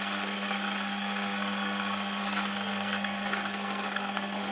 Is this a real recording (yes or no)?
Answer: no